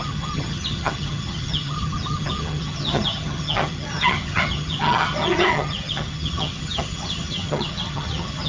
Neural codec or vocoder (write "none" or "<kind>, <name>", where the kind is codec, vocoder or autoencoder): vocoder, HiFi-GAN